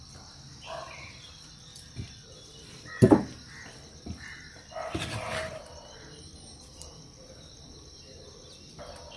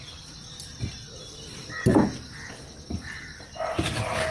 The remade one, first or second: first